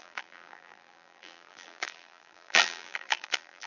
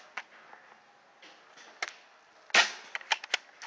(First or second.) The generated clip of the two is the first